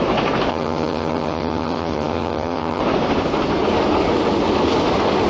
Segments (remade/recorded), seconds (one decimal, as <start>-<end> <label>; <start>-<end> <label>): 0.0-0.5 recorded; 0.5-2.8 remade; 2.8-5.3 recorded